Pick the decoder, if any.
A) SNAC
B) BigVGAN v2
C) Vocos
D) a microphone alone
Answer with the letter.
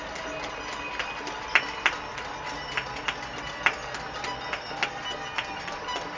D